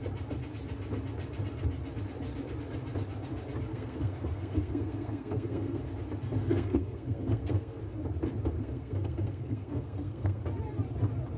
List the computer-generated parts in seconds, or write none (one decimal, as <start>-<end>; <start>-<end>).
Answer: 3.7-5.8; 6.4-7.8; 8.6-10.4